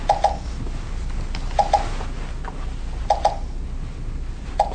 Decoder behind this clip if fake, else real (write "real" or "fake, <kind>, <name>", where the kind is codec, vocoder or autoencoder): real